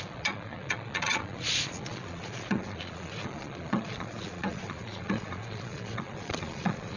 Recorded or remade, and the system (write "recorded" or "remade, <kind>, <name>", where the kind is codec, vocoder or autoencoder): remade, vocoder, Vocos